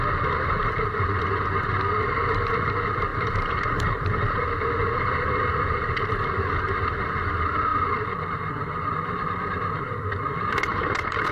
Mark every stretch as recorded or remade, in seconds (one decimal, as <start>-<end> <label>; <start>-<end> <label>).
0.0-3.1 recorded; 3.1-4.5 remade; 4.5-10.7 recorded; 10.7-11.3 remade